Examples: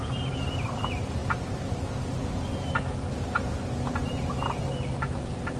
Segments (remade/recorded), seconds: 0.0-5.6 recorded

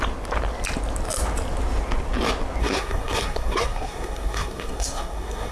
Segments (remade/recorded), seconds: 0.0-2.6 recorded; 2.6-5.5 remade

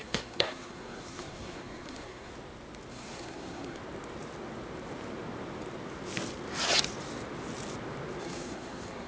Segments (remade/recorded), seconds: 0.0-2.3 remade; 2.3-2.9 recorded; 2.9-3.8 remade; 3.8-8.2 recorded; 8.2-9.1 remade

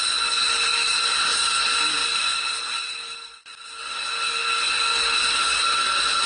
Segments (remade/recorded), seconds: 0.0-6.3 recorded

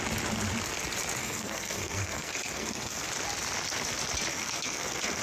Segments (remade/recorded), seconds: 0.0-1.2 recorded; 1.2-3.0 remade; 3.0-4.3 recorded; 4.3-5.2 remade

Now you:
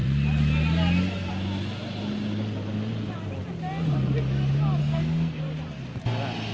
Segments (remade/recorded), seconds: 0.0-4.8 recorded; 4.8-5.4 remade; 5.4-6.5 recorded